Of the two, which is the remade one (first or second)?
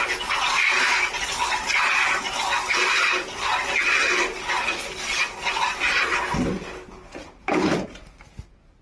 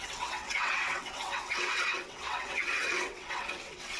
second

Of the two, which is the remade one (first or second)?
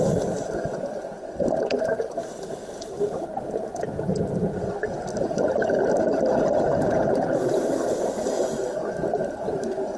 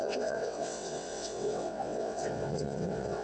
second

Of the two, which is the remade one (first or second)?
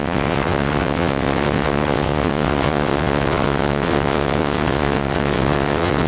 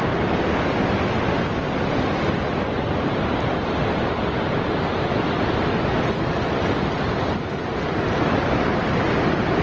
first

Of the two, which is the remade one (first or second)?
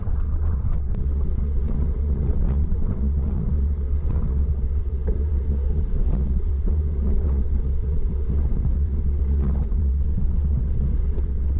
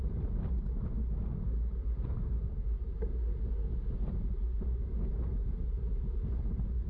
first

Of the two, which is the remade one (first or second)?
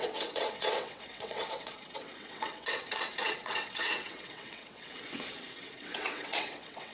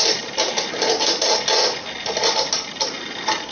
first